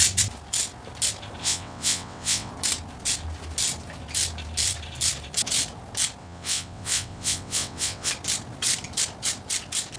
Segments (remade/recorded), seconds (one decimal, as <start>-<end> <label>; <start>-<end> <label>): 0.0-1.4 recorded; 1.4-2.5 remade; 2.5-6.2 recorded; 6.2-8.1 remade; 8.1-10.0 recorded